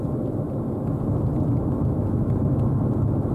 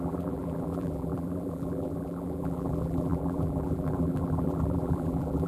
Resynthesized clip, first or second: second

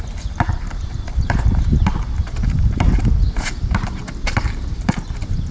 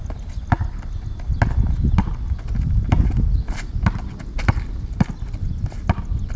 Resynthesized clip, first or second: first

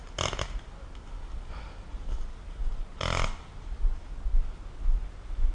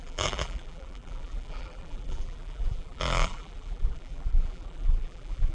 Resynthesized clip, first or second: second